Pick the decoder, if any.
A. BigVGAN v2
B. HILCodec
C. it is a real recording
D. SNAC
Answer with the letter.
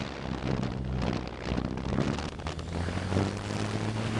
C